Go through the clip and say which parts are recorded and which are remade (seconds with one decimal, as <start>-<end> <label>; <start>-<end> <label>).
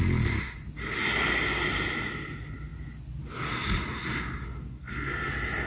0.0-4.7 recorded; 4.7-5.3 remade; 5.3-5.7 recorded